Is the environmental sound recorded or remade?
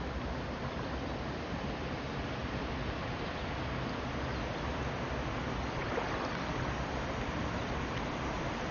recorded